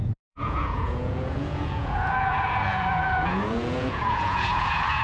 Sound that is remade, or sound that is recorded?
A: remade